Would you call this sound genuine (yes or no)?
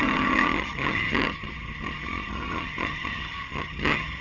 no